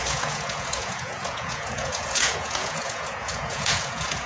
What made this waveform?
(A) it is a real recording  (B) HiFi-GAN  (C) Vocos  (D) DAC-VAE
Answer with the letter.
C